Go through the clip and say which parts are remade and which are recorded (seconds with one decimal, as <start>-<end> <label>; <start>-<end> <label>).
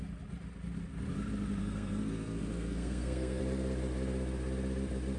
0.0-1.6 recorded; 1.6-3.4 remade; 3.4-5.2 recorded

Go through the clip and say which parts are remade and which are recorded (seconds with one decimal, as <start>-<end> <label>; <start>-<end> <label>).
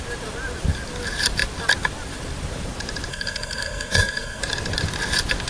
0.0-3.1 recorded; 3.1-4.4 remade; 4.4-5.5 recorded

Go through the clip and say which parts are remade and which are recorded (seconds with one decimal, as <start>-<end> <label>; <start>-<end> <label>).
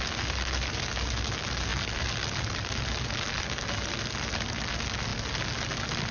0.0-6.1 recorded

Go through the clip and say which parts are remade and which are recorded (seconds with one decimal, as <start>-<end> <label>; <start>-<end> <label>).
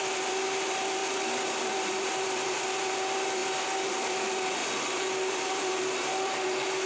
0.0-1.0 remade; 1.0-1.6 recorded; 1.6-4.6 remade; 4.6-5.3 recorded; 5.3-6.9 remade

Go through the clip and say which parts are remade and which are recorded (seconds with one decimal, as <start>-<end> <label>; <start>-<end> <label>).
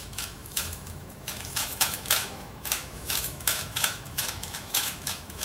0.0-5.4 remade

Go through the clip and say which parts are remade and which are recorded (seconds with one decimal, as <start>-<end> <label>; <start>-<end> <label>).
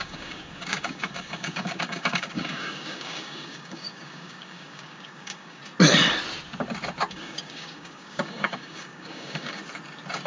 0.0-5.6 remade; 5.6-7.1 recorded; 7.1-9.6 remade; 9.6-10.3 recorded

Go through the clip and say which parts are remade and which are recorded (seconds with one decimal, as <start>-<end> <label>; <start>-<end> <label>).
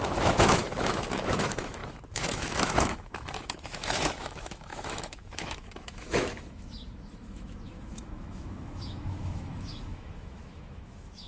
0.0-11.3 remade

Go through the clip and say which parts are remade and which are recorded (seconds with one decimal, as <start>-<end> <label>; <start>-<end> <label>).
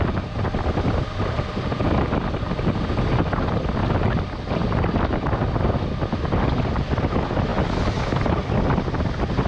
0.0-9.5 recorded